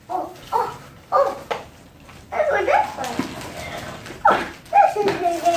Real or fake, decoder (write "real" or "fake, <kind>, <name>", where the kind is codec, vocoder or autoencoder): real